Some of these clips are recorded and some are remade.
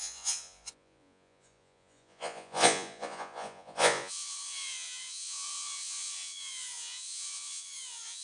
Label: remade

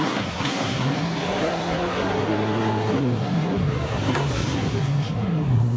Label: remade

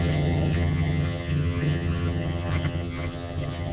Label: remade